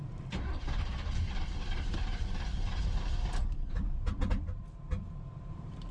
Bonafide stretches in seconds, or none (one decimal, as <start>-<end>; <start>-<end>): 2.5-5.4